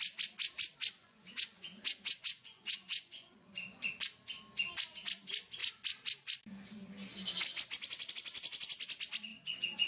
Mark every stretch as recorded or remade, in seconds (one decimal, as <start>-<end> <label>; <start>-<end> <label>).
0.0-1.0 recorded; 1.0-3.9 remade; 3.9-9.3 recorded; 9.3-9.9 remade